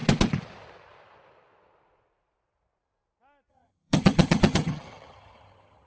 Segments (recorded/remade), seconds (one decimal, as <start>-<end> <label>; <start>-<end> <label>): 0.0-3.5 recorded; 3.5-5.9 remade